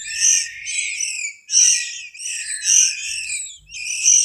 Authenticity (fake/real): real